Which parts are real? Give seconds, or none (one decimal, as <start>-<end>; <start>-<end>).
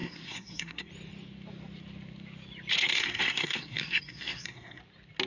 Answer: 0.9-2.8; 4.8-5.3